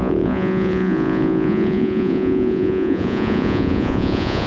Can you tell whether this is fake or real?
fake